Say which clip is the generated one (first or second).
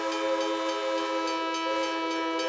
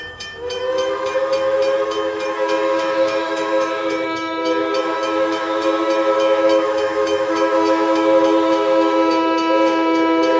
second